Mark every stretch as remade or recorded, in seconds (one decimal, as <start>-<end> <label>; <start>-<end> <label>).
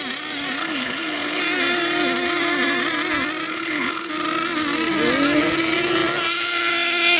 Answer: 0.0-0.6 recorded; 0.6-1.4 remade; 1.4-3.5 recorded; 3.5-4.1 remade; 4.1-7.2 recorded